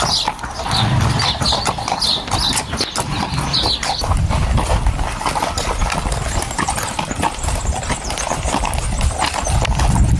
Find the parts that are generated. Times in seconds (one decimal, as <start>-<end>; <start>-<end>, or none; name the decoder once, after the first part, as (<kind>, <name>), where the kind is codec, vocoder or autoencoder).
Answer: none